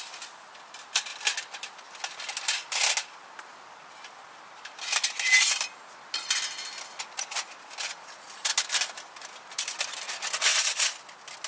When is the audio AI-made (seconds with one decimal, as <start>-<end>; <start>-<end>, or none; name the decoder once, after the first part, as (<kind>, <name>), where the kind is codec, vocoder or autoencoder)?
none